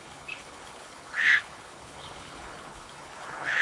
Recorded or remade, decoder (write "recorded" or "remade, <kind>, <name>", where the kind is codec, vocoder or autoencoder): remade, codec, HILCodec